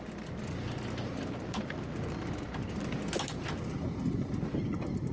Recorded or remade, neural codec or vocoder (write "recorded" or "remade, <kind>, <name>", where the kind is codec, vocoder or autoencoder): recorded